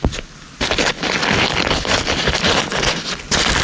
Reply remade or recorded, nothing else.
recorded